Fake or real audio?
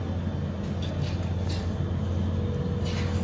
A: real